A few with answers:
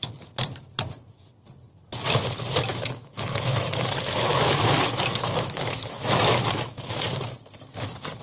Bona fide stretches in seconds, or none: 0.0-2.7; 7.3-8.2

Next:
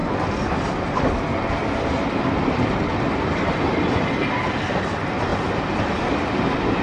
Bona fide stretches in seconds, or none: 0.0-6.8

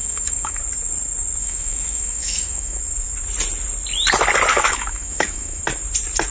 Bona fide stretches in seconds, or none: 0.6-1.4; 2.8-4.5; 5.6-6.3